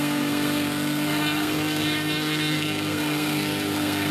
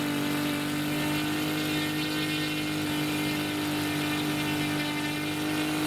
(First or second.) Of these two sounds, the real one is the second